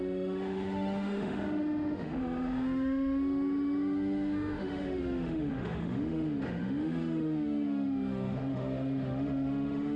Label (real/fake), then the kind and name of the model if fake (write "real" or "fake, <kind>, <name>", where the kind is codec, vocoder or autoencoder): fake, autoencoder, DAC-VAE